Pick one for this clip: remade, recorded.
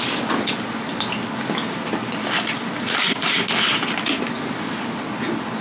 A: recorded